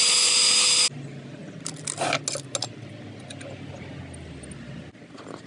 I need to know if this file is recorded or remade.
recorded